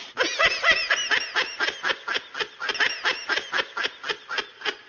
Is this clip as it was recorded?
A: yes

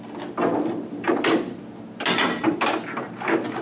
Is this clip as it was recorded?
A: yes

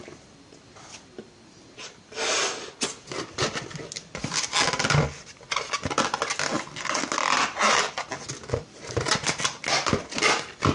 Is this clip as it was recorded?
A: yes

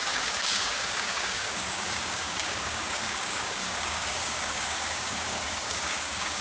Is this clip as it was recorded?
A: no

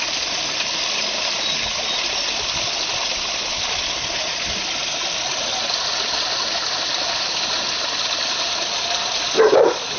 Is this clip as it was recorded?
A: yes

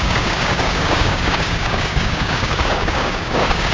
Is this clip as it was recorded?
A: no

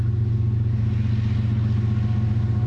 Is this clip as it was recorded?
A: yes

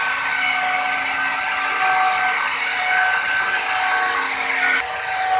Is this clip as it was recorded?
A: yes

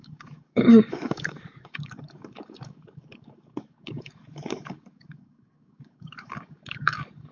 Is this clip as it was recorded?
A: no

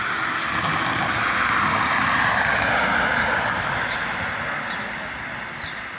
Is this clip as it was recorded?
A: yes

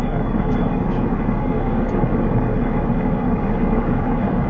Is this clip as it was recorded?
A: no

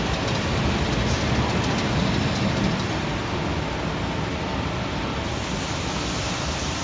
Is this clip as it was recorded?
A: yes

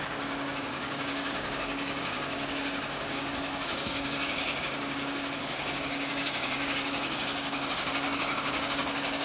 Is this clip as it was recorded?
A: no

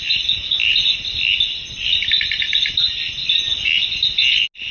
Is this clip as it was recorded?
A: yes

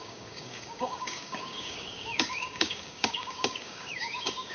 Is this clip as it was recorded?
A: no